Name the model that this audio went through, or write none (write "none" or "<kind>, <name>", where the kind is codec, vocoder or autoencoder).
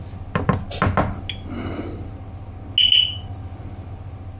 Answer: none